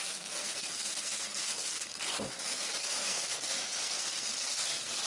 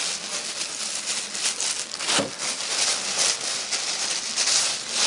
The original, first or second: second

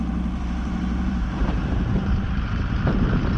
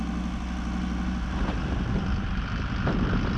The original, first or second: second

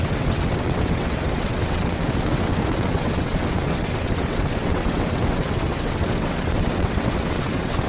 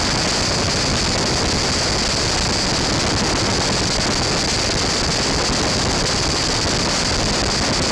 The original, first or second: second